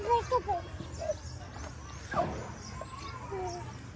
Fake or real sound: real